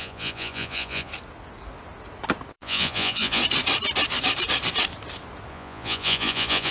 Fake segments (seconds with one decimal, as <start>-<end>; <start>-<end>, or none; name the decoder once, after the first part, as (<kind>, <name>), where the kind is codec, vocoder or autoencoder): 0.0-1.1 (vocoder, Vocos); 2.5-3.4; 5.5-6.7